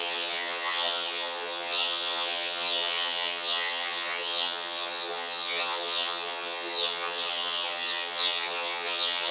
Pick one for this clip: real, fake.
fake